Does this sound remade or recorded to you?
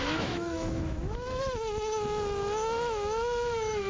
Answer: remade